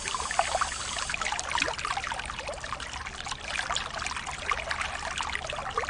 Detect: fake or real real